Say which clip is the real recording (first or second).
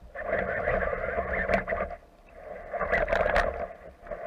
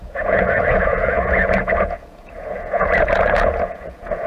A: first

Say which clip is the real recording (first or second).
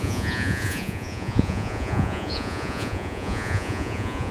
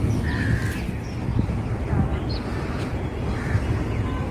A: second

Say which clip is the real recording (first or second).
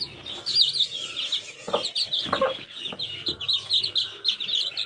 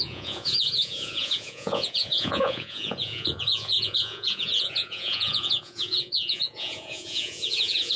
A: first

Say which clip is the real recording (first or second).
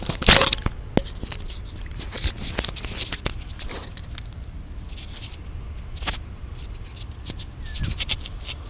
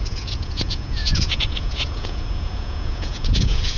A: first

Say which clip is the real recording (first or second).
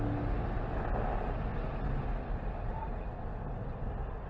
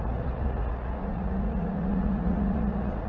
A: first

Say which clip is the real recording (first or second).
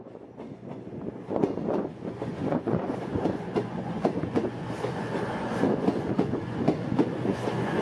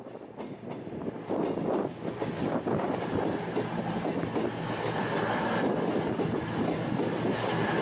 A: second